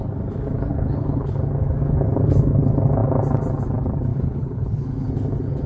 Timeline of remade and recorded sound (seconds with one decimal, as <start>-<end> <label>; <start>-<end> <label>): 0.0-0.7 recorded; 0.7-1.3 remade; 1.3-4.1 recorded; 4.1-5.1 remade; 5.1-5.7 recorded

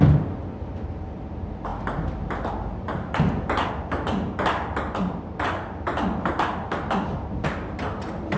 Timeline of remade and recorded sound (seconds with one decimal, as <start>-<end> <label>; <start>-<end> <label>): 0.0-8.4 recorded